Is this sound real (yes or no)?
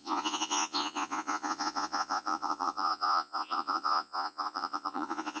no